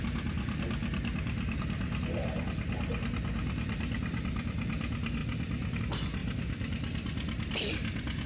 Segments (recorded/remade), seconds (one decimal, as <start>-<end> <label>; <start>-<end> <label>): 0.0-0.8 recorded; 0.8-1.6 remade; 1.6-5.2 recorded; 5.2-5.8 remade; 5.8-6.2 recorded; 6.2-8.3 remade